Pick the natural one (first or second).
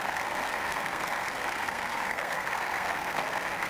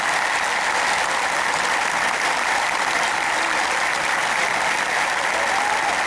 second